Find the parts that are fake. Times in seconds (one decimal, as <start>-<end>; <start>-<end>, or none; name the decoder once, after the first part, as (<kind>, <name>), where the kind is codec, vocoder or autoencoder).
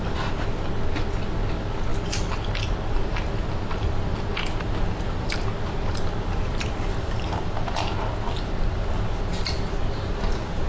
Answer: none